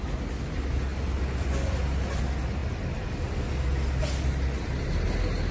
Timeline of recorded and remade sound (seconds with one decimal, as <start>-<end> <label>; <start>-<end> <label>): 0.0-5.5 recorded